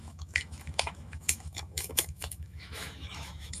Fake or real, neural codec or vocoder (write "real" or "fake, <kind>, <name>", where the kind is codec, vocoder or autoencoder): fake, autoencoder, DAC-VAE